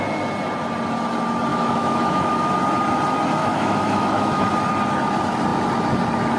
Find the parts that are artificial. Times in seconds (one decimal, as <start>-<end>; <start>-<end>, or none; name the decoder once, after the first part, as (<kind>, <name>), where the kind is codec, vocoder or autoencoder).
1.5-2.5 (autoencoder, DAC-VAE); 3.4-4.5

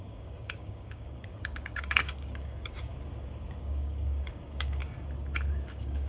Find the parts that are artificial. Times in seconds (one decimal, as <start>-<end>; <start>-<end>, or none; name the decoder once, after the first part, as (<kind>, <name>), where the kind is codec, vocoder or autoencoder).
0.0-2.9 (codec, DAC); 3.6-4.8; 5.5-6.1

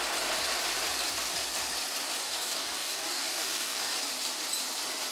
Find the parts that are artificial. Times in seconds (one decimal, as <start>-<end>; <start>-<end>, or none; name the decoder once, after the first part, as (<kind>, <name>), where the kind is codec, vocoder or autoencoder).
2.2-4.0 (codec, DAC)

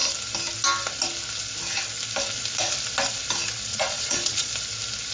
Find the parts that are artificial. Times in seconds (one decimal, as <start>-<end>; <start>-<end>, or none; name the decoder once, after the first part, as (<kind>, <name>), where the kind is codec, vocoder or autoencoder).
3.7-4.5 (vocoder, Vocos)

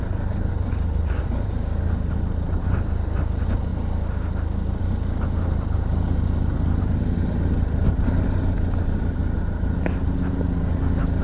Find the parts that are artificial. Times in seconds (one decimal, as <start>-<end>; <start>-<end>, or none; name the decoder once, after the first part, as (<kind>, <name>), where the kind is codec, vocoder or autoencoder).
none

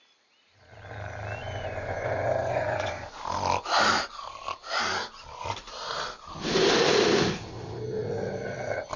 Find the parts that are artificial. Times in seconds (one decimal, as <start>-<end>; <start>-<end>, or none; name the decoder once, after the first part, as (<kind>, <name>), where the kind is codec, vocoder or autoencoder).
1.4-3.1 (vocoder, Vocos)

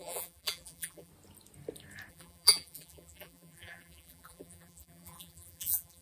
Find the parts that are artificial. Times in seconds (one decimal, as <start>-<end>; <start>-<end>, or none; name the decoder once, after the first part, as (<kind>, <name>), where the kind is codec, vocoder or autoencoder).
0.0-1.1 (vocoder, BigVGAN v2); 2.1-6.0